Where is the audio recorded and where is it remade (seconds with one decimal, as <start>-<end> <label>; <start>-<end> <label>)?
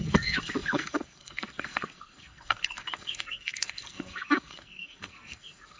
0.0-5.8 remade